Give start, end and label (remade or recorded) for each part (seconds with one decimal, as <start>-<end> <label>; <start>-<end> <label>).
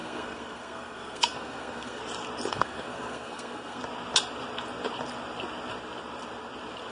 0.0-2.0 remade; 2.0-2.5 recorded; 2.5-3.8 remade; 3.8-6.9 recorded